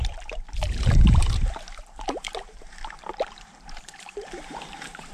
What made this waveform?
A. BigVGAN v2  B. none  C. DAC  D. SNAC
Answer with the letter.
A